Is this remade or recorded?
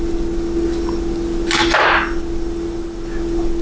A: recorded